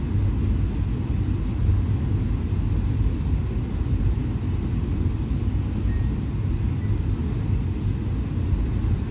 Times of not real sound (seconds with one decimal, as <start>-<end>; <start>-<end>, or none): none